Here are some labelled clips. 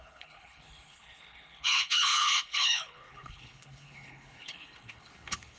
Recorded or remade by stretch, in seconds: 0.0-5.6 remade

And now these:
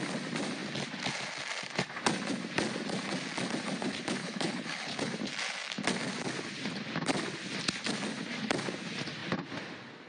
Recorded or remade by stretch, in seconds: 0.0-4.2 recorded; 4.2-5.1 remade; 5.1-10.1 recorded